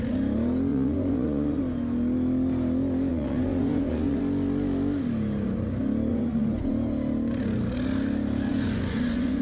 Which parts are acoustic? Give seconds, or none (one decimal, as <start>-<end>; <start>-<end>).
0.0-0.7; 1.6-3.1; 4.2-6.1; 6.7-8.5